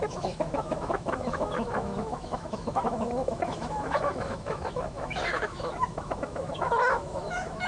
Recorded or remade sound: remade